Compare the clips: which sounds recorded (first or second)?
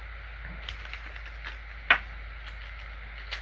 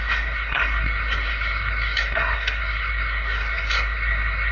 first